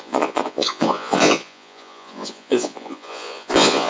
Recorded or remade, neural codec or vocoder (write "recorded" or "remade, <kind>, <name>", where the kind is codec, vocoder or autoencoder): remade, vocoder, Vocos